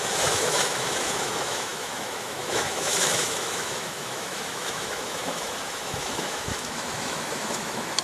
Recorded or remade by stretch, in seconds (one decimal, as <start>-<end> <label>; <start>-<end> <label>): 0.0-8.0 remade